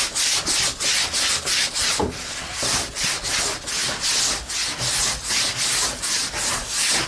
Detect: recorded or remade recorded